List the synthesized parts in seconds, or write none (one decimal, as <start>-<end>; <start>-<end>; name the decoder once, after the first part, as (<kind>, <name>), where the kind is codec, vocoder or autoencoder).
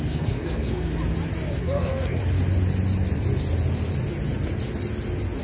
0.0-0.9 (codec, SNAC); 1.6-2.2